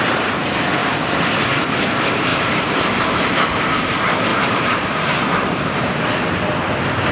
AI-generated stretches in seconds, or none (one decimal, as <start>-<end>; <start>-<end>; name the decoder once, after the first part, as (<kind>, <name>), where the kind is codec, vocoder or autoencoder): 0.8-1.3 (vocoder, BigVGAN v2); 2.3-3.0; 4.3-6.2